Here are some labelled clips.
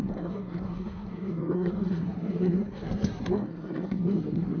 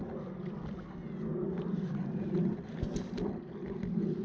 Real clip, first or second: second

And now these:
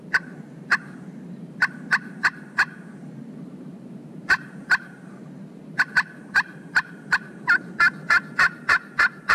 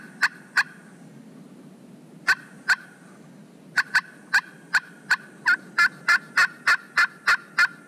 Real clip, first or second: second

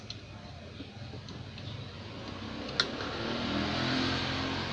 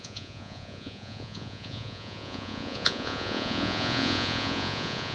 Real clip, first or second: first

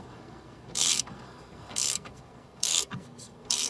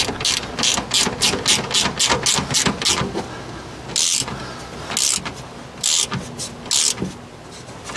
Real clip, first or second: second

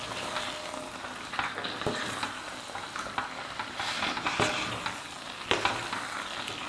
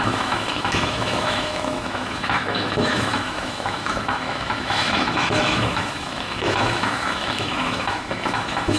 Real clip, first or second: first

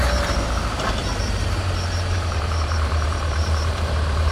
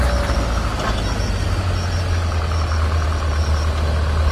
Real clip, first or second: second